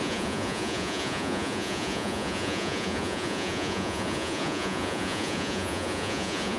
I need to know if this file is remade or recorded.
remade